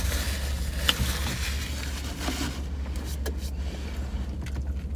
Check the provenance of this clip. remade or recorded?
recorded